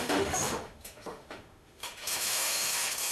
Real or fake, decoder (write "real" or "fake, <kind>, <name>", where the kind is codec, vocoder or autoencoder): fake, autoencoder, DAC-VAE